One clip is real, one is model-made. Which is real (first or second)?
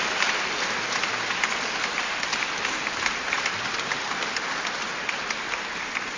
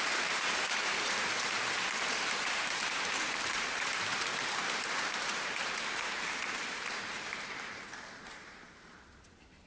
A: first